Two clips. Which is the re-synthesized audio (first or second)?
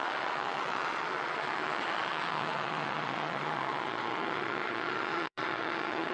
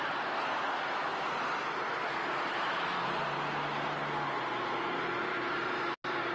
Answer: first